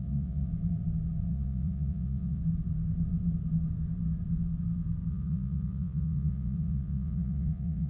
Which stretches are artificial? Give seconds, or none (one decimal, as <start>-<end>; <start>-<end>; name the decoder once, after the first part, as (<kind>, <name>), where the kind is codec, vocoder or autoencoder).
0.0-0.5 (vocoder, Vocos); 1.3-2.4; 5.1-7.9